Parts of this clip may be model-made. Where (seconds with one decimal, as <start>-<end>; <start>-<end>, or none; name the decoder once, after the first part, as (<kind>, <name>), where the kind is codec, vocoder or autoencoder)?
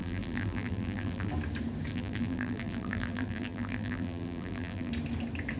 0.0-1.3 (vocoder, BigVGAN v2); 1.9-4.9